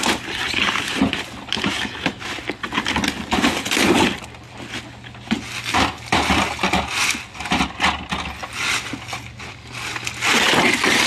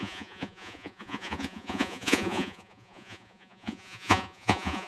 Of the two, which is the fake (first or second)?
second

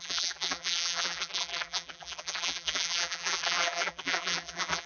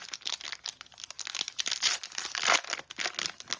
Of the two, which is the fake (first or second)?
first